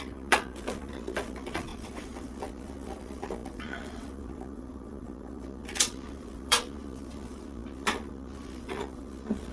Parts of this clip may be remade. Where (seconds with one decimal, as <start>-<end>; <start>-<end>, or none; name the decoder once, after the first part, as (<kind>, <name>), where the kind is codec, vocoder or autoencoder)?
0.0-9.5 (vocoder, WaveNeXt)